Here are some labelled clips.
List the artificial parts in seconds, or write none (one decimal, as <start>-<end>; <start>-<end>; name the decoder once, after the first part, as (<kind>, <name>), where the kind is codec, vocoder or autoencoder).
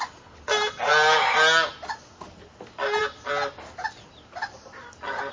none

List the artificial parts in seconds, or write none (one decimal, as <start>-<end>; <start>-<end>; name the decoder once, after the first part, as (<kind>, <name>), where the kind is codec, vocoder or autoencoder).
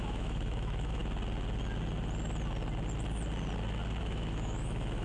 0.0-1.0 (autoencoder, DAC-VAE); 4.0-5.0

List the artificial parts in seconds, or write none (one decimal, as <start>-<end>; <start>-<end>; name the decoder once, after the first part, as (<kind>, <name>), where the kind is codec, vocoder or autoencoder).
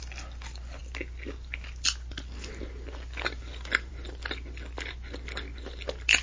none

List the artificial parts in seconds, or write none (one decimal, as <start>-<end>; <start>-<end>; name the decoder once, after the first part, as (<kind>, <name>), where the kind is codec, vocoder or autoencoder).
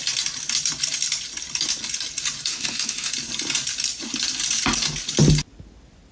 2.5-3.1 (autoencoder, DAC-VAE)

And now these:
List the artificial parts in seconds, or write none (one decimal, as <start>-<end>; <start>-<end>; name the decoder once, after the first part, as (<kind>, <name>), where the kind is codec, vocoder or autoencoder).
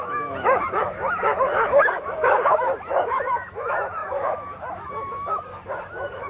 0.0-6.3 (autoencoder, DAC-VAE)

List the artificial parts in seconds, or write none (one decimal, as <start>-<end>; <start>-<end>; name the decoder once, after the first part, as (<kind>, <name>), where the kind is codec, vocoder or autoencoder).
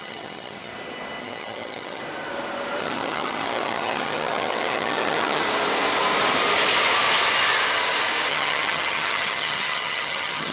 0.0-0.7 (vocoder, HiFi-GAN); 1.2-2.0; 2.8-5.4; 8.3-10.5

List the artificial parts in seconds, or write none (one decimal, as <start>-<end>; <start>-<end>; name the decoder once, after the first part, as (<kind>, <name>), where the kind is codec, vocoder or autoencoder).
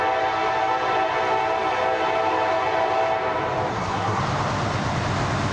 3.7-4.2 (codec, SNAC)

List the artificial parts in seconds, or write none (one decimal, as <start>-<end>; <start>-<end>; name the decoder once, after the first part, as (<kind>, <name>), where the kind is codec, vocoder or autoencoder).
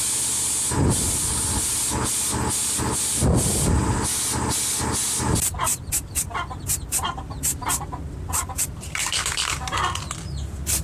5.7-6.6 (vocoder, BigVGAN v2); 7.5-10.8